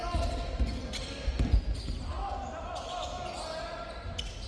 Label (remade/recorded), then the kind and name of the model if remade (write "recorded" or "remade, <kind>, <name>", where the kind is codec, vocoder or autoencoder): recorded